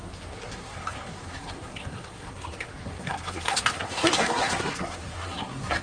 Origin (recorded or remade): remade